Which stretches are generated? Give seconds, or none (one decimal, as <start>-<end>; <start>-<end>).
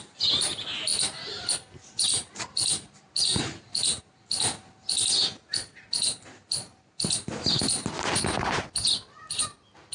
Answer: none